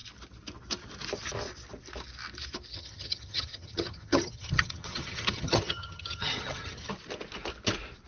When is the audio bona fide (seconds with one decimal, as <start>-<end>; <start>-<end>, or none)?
0.0-2.7; 6.9-8.1